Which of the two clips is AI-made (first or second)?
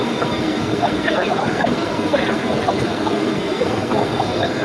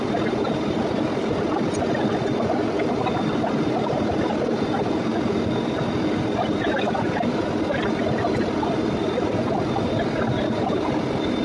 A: first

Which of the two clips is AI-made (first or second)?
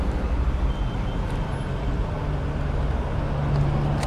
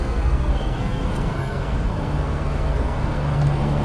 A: second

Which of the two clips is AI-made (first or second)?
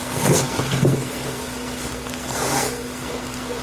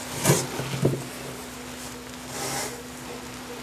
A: first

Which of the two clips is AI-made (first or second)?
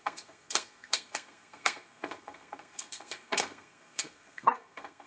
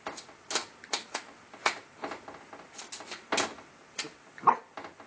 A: first